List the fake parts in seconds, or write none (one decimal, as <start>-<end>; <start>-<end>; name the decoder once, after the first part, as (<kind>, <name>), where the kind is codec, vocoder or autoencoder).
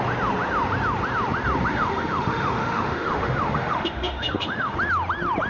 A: 1.7-4.7 (autoencoder, DAC-VAE)